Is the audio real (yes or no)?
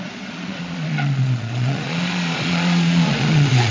no